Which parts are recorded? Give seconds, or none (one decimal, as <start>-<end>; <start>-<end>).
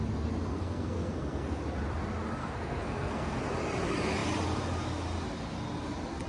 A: 0.0-0.5; 1.6-2.4; 3.4-6.3